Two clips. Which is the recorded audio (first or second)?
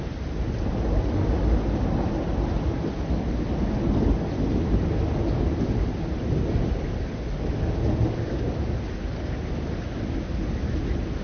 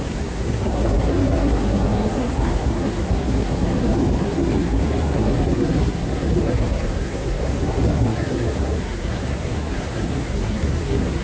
first